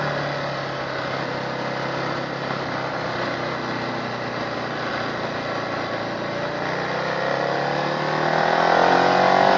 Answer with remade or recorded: recorded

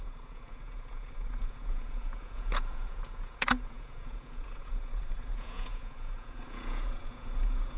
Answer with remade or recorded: remade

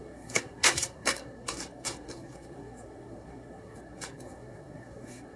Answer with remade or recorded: remade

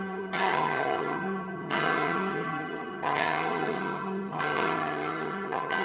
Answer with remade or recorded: remade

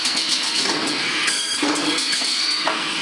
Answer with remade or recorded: remade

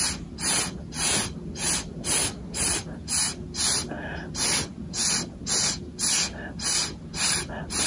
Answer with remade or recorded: recorded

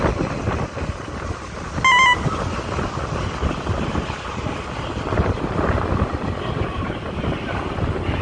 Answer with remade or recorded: recorded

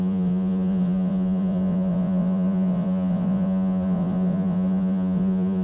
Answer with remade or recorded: remade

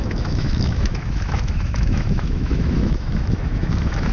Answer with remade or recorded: remade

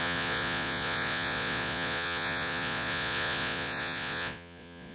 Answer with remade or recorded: remade